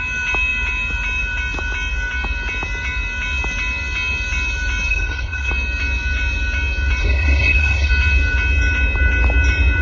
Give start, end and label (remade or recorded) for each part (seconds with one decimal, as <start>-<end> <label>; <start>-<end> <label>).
0.0-4.9 recorded; 4.9-5.5 remade; 5.5-7.0 recorded; 7.0-7.9 remade; 7.9-9.8 recorded